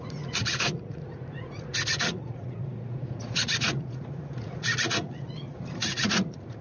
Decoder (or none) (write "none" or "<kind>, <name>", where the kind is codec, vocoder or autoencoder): vocoder, Vocos